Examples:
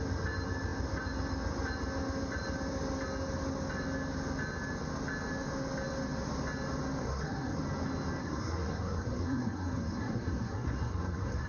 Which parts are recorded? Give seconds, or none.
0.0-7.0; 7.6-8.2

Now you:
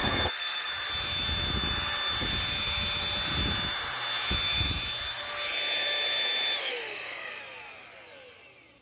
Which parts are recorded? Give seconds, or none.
0.7-6.6; 7.4-8.8

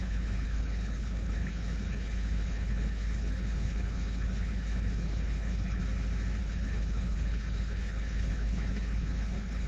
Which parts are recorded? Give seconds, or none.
5.8-6.4

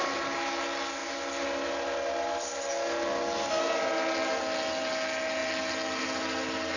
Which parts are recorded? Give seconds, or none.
0.0-6.8

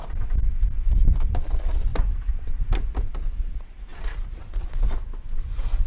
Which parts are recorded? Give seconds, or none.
0.0-1.9; 3.3-5.9

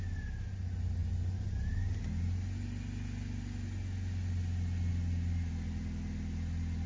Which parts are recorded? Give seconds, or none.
0.0-6.9